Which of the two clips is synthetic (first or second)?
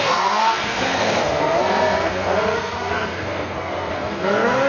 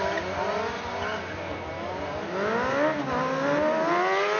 first